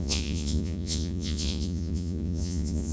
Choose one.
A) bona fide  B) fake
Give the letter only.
B